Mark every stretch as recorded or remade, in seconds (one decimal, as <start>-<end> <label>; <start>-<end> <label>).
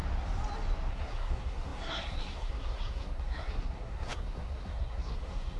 0.0-0.9 recorded; 0.9-5.6 remade